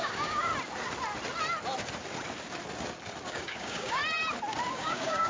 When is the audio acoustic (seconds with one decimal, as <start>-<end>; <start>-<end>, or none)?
0.5-3.3; 4.0-4.7